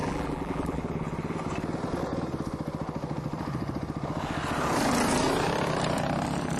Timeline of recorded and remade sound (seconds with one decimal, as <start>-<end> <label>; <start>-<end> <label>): 0.0-0.8 remade; 0.8-6.6 recorded